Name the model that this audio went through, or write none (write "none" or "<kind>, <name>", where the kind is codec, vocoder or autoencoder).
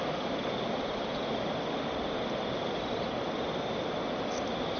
none